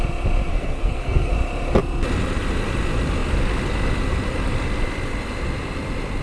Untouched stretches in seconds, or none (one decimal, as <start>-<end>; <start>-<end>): 0.0-0.5; 1.3-6.2